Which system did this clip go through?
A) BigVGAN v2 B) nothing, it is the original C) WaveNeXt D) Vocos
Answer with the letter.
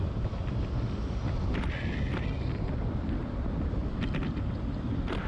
B